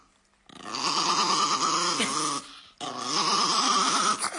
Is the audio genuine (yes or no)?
yes